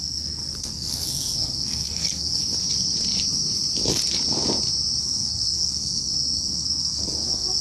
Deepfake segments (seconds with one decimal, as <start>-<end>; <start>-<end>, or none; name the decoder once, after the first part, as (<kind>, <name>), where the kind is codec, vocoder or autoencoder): 0.0-2.4 (codec, SNAC); 5.0-7.6